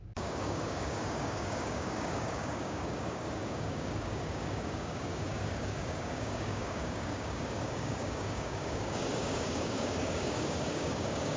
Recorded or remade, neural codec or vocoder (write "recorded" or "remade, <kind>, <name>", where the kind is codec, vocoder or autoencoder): remade, codec, DAC